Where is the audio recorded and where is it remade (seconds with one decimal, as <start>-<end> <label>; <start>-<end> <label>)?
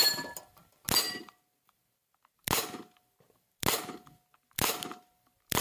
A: 0.0-5.6 recorded